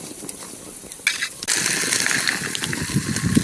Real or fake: real